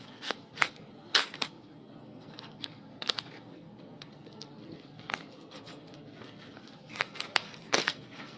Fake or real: fake